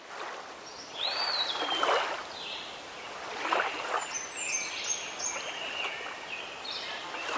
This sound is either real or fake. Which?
real